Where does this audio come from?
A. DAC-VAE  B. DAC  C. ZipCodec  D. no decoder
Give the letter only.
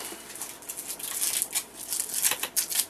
D